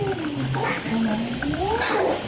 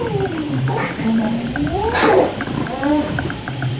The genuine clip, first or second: first